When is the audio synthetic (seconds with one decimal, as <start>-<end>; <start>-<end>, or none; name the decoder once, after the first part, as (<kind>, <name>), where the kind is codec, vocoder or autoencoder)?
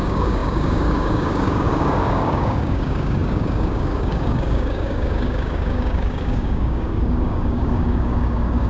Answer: 0.0-8.7 (codec, DAC)